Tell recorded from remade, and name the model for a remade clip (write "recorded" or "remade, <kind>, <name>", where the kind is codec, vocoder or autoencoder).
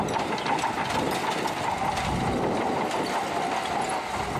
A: recorded